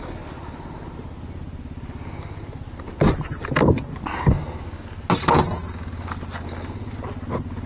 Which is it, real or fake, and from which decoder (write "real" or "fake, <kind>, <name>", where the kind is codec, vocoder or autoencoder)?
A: real